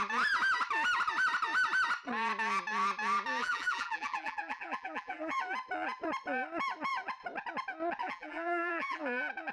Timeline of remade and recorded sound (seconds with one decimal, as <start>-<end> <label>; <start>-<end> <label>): 0.0-3.4 recorded; 3.4-5.4 remade; 5.4-8.0 recorded; 8.0-9.0 remade; 9.0-9.5 recorded